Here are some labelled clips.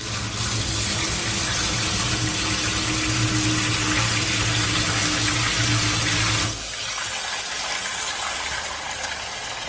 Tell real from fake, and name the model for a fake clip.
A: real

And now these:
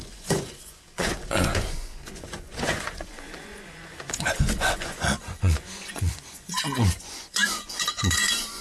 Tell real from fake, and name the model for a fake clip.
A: fake, vocoder, Vocos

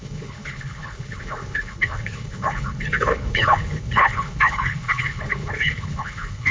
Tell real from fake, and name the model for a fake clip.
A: fake, codec, HILCodec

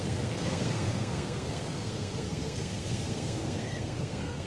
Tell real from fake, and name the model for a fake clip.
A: fake, codec, SNAC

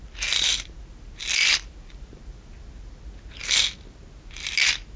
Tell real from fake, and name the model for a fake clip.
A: real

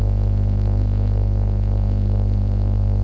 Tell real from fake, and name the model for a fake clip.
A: fake, codec, SNAC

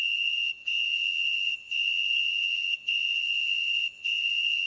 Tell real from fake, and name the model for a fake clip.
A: fake, vocoder, Vocos